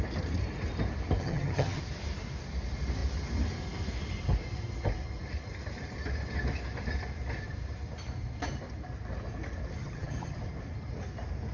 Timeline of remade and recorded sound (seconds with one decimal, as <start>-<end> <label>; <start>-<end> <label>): 0.0-1.2 recorded; 1.2-1.8 remade; 1.8-9.8 recorded; 9.8-10.4 remade; 10.4-11.5 recorded